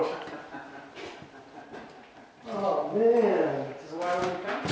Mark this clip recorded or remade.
recorded